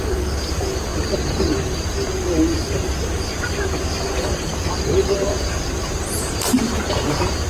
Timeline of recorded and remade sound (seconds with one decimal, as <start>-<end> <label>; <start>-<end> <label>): 0.0-0.9 remade; 0.9-2.6 recorded; 2.6-4.5 remade; 4.5-5.3 recorded; 5.3-7.5 remade